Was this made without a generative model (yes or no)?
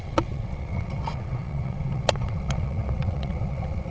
no